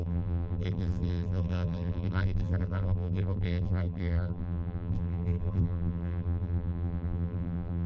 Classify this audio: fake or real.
fake